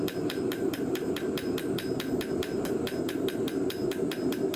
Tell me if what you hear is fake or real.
fake